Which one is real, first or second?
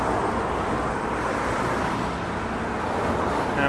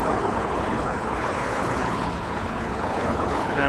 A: first